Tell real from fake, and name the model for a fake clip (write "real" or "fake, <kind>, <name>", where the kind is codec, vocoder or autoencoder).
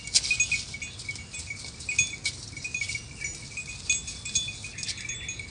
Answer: real